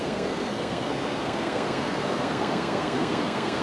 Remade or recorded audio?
remade